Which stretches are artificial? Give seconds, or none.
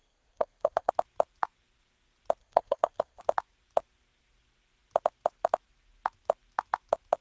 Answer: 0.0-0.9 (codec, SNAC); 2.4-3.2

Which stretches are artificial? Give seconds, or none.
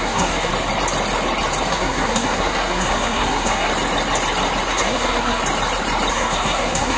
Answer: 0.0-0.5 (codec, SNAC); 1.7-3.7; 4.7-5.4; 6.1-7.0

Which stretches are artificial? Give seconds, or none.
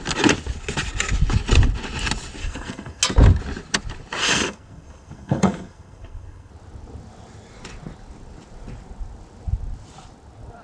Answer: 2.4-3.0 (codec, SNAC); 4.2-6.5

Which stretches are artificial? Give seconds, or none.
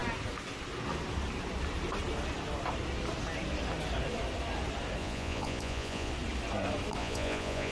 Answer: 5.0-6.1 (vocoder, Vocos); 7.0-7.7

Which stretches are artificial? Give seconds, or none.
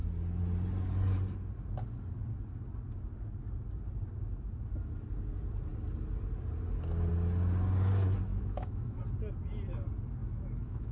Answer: 8.3-9.0 (autoencoder, DAC-VAE); 10.2-10.9